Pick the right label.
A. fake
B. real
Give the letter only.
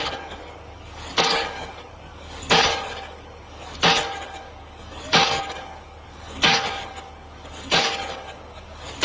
A